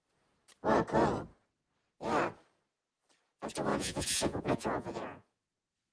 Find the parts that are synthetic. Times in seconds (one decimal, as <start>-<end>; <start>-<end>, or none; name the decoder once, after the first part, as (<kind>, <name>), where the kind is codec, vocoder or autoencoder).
3.7-5.9 (vocoder, Vocos)